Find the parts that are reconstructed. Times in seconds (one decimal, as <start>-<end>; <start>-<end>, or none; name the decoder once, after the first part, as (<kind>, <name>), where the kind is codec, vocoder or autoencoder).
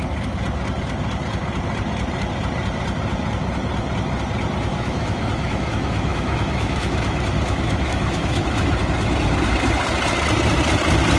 4.7-8.7 (autoencoder, DAC-VAE)